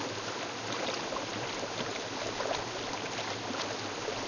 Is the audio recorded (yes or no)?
yes